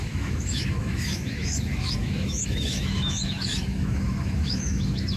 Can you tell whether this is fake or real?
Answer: fake